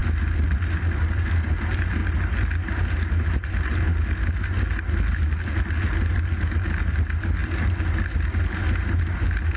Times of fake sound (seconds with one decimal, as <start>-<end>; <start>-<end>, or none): none